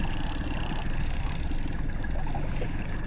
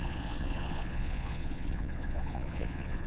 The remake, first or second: second